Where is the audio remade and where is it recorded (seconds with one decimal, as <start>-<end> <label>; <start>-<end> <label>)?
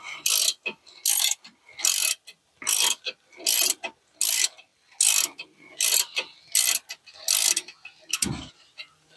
0.0-9.2 recorded